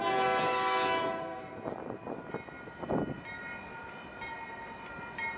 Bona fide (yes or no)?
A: yes